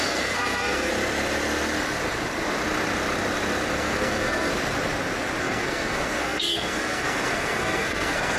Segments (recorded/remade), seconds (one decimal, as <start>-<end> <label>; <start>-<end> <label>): 0.0-0.9 remade; 0.9-3.7 recorded; 3.7-4.5 remade; 4.5-5.4 recorded; 5.4-8.4 remade